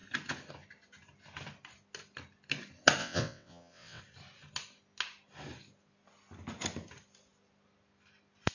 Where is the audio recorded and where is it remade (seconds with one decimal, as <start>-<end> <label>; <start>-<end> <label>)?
0.0-3.0 recorded; 3.0-4.0 remade; 4.0-8.5 recorded